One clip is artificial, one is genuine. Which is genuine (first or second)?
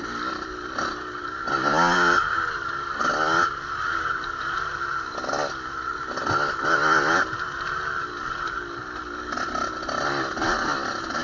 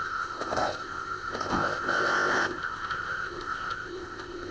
first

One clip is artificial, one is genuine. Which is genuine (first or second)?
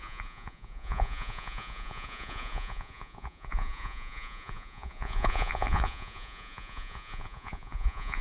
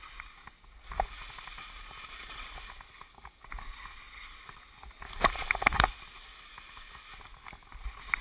second